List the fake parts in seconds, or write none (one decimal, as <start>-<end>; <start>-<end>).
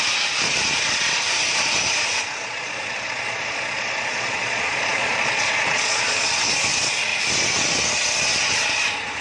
2.4-6.3